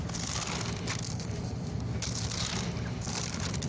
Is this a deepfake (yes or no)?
no